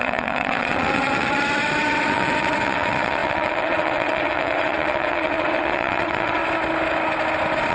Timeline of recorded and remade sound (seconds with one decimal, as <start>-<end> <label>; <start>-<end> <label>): 0.0-6.4 remade; 6.4-7.7 recorded